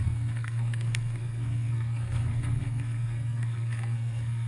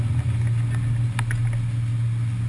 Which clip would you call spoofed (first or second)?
first